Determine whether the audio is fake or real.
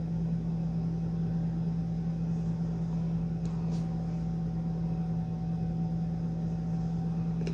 real